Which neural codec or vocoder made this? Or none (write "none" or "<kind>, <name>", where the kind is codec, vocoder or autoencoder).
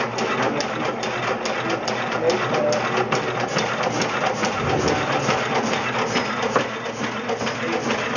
none